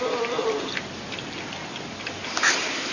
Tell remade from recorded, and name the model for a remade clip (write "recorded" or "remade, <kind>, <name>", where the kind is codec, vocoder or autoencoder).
recorded